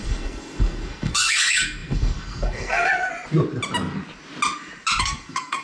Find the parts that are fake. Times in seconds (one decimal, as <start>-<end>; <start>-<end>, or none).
0.0-3.1; 5.0-5.6